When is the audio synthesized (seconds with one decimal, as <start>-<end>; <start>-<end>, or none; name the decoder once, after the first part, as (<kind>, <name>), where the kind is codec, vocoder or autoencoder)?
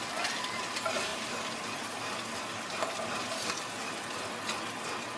1.1-2.4 (vocoder, BigVGAN v2)